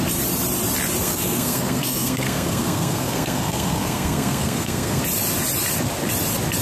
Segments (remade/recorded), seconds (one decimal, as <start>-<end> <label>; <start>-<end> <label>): 0.0-1.0 recorded; 1.0-5.0 remade; 5.0-6.6 recorded